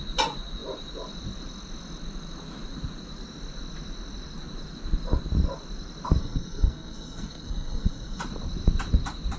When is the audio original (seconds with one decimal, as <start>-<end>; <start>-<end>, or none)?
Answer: 0.0-6.2; 8.2-9.4

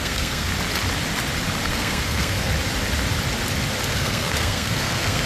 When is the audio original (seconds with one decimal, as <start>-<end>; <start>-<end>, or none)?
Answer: 0.5-1.7; 2.5-3.9